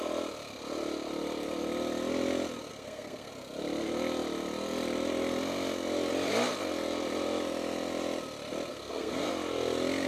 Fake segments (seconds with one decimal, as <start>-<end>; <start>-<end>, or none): 2.7-3.3; 8.7-9.3